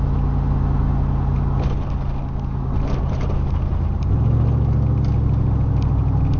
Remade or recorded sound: recorded